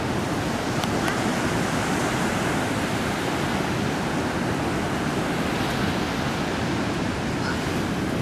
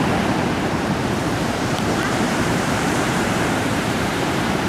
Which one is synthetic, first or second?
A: second